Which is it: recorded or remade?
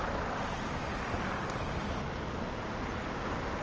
recorded